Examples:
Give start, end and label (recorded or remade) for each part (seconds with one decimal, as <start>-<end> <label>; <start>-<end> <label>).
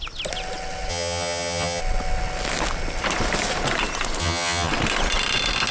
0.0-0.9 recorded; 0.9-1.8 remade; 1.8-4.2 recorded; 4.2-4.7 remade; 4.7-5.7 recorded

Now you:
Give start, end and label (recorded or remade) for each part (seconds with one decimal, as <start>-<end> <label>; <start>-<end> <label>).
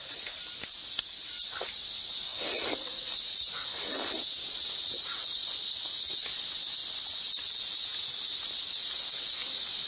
0.0-9.9 recorded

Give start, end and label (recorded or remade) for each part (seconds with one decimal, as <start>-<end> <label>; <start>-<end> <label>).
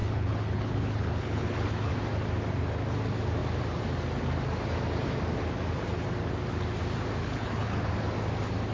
0.0-1.9 remade; 1.9-7.2 recorded; 7.2-7.9 remade; 7.9-8.7 recorded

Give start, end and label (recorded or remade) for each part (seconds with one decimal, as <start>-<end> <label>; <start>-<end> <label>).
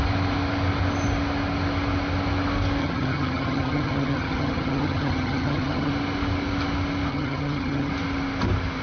0.0-2.8 recorded; 2.8-5.9 remade; 5.9-7.1 recorded; 7.1-7.9 remade; 7.9-8.8 recorded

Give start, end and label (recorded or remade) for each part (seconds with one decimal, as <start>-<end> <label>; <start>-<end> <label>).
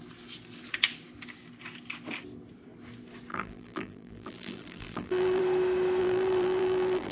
0.0-3.3 recorded; 3.3-5.4 remade; 5.4-6.0 recorded; 6.0-7.1 remade